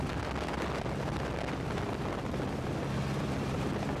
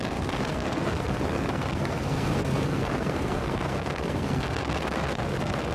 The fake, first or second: second